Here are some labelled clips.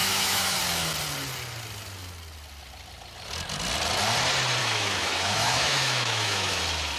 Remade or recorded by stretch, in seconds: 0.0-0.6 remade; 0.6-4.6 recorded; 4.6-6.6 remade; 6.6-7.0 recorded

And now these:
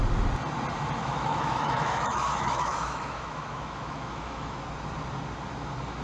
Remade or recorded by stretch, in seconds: 0.0-1.0 recorded; 1.0-4.6 remade; 4.6-6.0 recorded